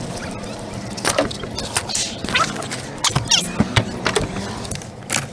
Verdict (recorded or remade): recorded